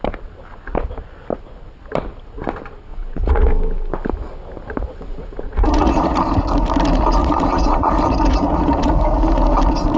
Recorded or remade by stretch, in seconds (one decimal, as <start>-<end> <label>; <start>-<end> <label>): 0.0-2.9 recorded; 2.9-3.5 remade; 3.5-5.1 recorded; 5.1-6.2 remade; 6.2-7.2 recorded; 7.2-7.9 remade; 7.9-8.3 recorded; 8.3-8.9 remade; 8.9-10.0 recorded

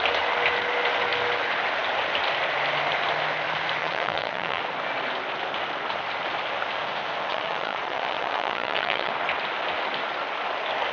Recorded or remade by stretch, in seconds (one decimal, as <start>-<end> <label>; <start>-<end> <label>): 0.0-3.8 recorded; 3.8-4.6 remade; 4.6-7.3 recorded; 7.3-9.1 remade; 9.1-10.9 recorded